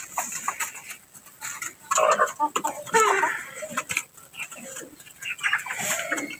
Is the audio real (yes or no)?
yes